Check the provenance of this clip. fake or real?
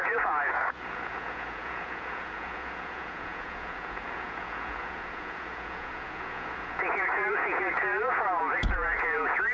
fake